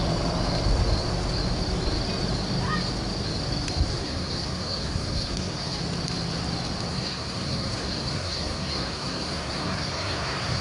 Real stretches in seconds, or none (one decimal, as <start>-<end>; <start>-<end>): 0.0-3.9; 5.8-6.9